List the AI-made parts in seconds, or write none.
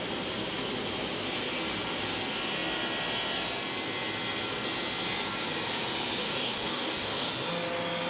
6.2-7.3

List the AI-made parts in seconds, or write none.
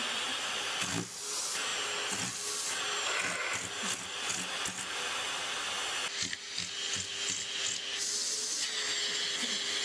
none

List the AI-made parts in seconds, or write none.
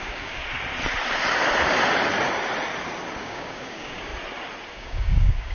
0.0-0.4; 3.2-4.1; 4.7-5.5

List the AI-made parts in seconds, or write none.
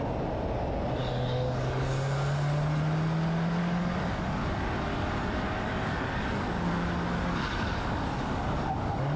1.0-1.9; 3.6-4.4; 4.9-9.2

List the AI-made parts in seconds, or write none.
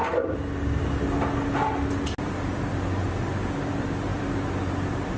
none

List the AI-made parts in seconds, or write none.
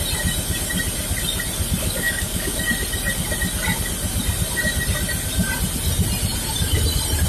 1.8-2.6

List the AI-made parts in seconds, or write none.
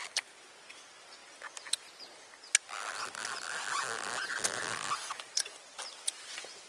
none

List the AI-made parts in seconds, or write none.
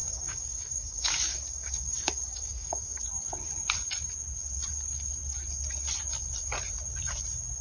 0.0-3.0